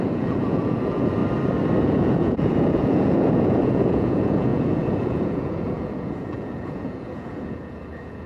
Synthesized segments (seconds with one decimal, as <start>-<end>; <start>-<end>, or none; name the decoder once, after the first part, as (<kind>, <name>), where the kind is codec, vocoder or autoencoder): 0.0-1.2 (vocoder, Vocos); 1.8-8.3